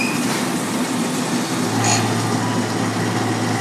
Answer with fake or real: real